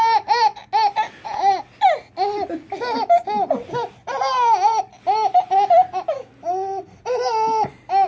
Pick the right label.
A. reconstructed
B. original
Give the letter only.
B